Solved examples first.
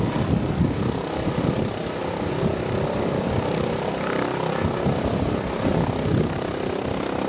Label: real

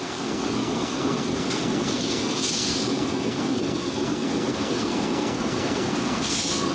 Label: fake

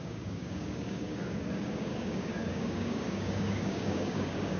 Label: fake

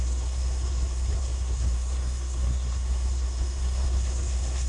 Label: fake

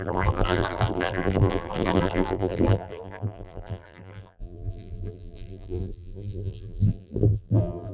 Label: fake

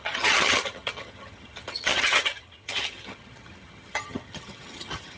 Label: fake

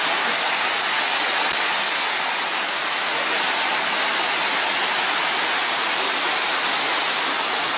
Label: real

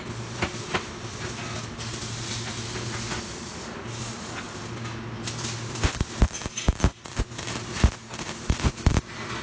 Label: real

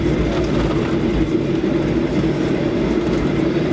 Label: real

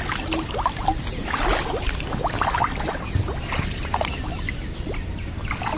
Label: real